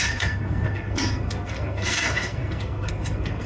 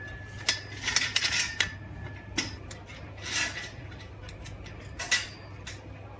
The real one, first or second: second